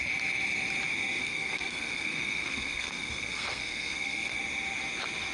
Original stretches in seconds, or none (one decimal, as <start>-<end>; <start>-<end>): 0.0-1.2; 4.4-5.3